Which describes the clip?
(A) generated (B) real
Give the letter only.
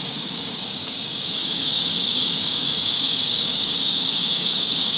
A